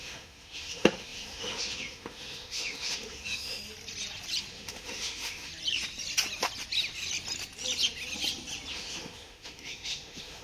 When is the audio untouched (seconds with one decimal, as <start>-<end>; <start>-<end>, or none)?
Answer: 3.6-4.5; 5.5-8.7